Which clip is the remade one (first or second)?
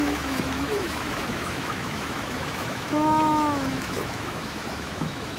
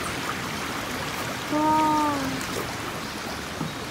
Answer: first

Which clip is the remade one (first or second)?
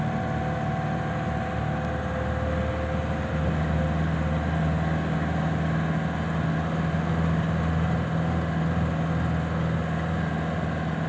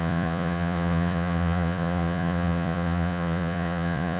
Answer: second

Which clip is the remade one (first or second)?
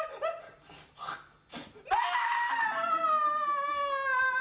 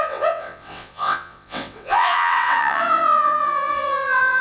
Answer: second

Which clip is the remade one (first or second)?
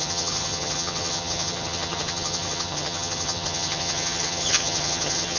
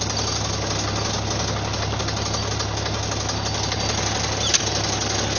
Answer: first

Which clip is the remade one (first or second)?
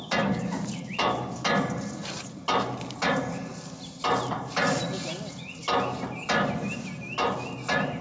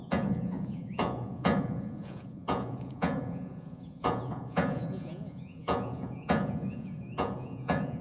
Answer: second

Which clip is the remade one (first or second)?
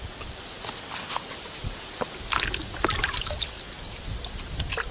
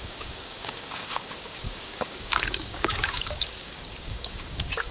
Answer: second